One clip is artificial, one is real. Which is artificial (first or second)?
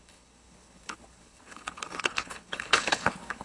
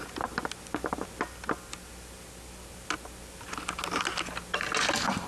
first